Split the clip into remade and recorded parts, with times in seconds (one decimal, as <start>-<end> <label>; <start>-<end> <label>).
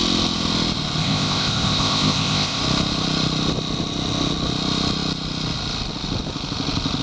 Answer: 0.0-1.0 recorded; 1.0-2.6 remade; 2.6-7.0 recorded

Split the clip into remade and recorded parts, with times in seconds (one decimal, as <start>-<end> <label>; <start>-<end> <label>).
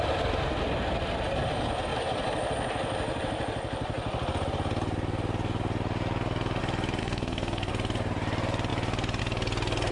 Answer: 0.0-7.0 recorded; 7.0-7.7 remade; 7.7-9.9 recorded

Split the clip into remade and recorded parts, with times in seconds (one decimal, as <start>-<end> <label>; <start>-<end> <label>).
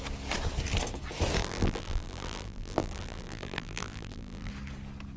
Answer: 0.0-1.4 recorded; 1.4-4.5 remade; 4.5-5.2 recorded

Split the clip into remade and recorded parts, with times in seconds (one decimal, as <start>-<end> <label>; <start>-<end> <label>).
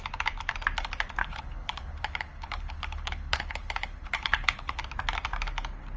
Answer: 0.0-1.2 recorded; 1.2-4.8 remade; 4.8-6.0 recorded